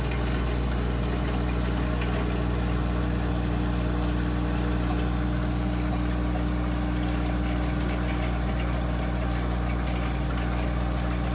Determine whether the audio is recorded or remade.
recorded